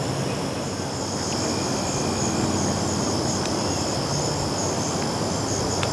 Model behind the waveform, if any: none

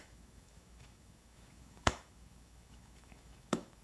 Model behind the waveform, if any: autoencoder, DAC-VAE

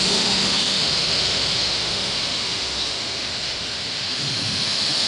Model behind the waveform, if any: autoencoder, DAC-VAE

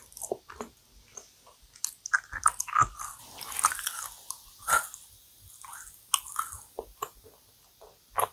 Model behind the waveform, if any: none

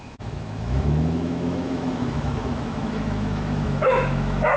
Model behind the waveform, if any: autoencoder, DAC-VAE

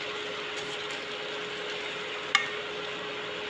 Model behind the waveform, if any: none